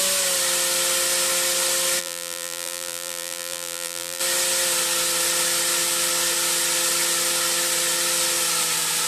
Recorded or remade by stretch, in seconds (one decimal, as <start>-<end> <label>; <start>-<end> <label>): 0.0-2.0 recorded; 2.0-4.2 remade; 4.2-9.1 recorded